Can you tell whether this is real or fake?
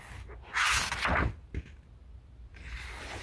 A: real